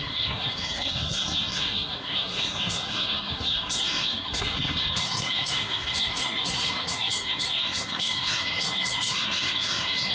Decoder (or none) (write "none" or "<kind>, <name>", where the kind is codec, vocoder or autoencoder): codec, SNAC